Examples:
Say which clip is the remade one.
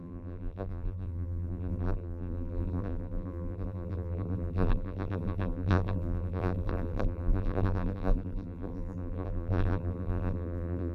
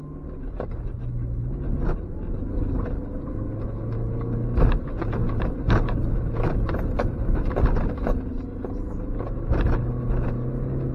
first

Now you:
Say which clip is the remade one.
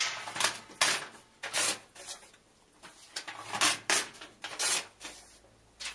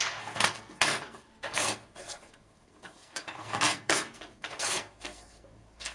second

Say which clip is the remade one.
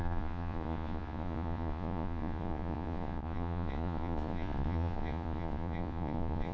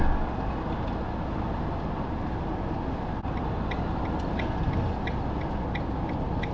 first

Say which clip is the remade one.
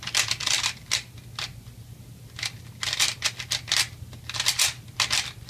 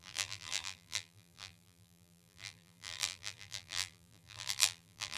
second